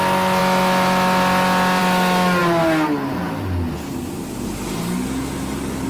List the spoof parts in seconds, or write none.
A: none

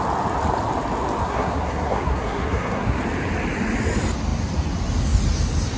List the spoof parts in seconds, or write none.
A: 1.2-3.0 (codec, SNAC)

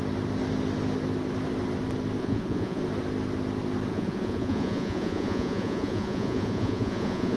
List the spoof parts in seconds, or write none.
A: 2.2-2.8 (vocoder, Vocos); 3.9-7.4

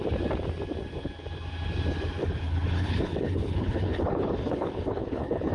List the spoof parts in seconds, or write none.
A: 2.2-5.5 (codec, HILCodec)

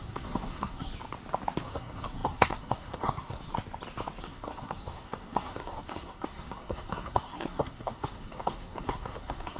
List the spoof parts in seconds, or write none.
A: 0.0-0.9 (codec, SNAC); 1.6-3.5; 4.2-9.6

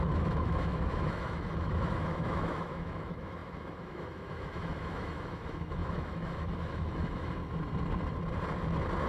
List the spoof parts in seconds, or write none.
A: 0.0-7.4 (autoencoder, DAC-VAE)

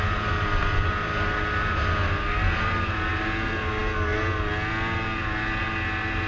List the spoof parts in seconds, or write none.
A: none

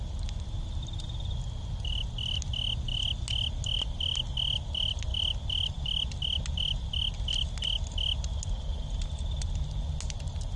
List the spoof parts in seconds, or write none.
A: none